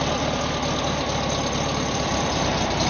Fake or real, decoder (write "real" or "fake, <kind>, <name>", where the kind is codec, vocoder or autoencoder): real